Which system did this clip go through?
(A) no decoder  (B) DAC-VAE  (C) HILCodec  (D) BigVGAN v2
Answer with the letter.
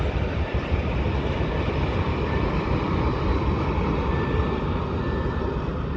A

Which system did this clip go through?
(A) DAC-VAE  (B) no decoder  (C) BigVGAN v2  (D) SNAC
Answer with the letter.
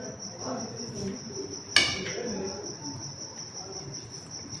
B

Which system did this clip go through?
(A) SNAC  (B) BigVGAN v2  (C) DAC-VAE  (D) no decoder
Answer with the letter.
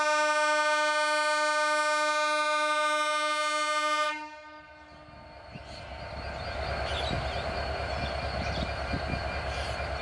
D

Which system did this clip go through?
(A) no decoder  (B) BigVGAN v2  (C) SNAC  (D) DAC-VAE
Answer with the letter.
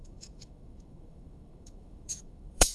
D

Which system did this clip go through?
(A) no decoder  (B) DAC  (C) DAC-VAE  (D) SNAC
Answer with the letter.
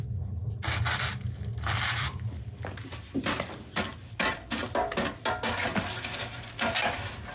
A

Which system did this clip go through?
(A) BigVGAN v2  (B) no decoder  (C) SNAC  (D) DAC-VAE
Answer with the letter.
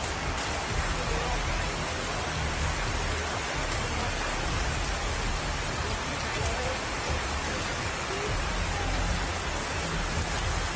B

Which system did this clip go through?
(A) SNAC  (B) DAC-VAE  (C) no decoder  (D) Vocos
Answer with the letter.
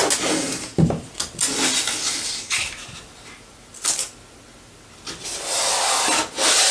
C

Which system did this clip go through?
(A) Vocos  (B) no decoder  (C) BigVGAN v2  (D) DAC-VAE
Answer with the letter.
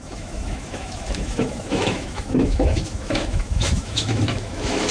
D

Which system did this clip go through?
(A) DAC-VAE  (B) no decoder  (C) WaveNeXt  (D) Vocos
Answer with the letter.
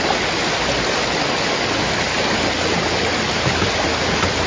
B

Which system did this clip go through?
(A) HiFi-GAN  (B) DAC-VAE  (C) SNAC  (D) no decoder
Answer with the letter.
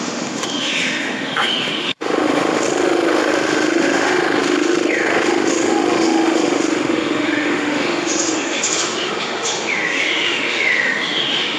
B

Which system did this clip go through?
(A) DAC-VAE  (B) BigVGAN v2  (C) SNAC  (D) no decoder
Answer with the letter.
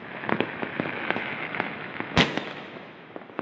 A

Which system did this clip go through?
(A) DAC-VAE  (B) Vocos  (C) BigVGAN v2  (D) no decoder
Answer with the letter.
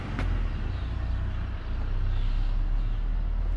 D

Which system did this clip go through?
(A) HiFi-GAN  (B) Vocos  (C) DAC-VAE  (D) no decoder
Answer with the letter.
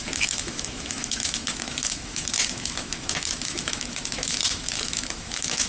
C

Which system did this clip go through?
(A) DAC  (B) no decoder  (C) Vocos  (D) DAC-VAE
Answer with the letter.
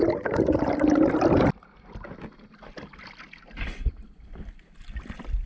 B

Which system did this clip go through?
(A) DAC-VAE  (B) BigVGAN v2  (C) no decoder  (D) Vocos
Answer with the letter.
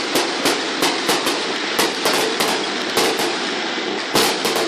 C